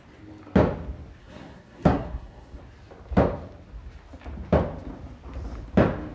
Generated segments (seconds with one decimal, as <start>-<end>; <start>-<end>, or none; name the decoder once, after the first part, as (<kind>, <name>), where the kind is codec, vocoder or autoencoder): 1.2-2.6 (codec, SNAC)